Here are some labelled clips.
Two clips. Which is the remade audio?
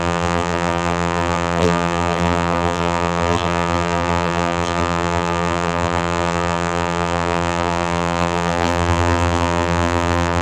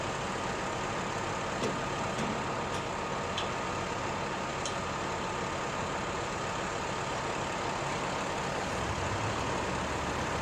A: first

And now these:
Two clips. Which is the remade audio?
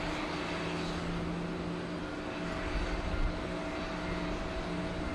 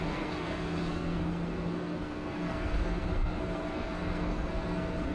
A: second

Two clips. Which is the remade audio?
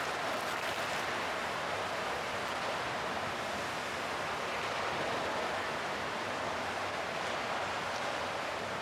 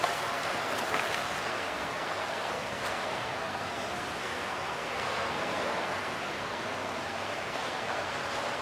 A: second